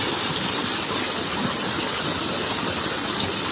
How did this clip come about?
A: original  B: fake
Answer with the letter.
A